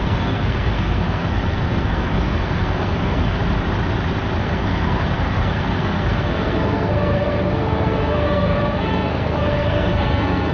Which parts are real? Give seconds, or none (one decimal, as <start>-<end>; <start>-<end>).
3.4-4.4